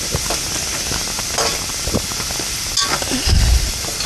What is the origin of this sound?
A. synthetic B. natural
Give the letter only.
B